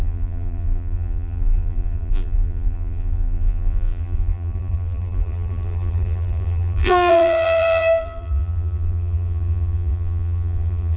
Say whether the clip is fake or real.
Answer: fake